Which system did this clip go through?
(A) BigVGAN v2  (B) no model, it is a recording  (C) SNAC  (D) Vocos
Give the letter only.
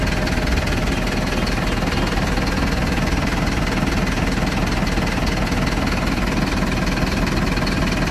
B